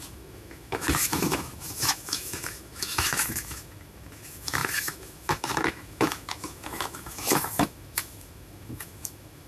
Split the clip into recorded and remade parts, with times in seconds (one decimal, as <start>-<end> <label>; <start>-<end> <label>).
0.0-9.5 remade